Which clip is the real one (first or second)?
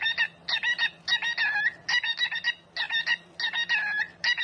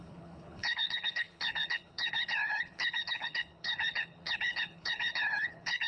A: first